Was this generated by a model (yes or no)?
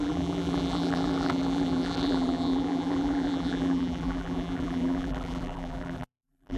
yes